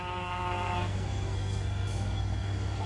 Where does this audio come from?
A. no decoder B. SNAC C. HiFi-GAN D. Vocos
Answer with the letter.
B